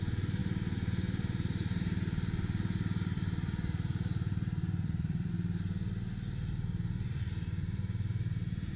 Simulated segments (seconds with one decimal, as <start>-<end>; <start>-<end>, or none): 0.4-5.3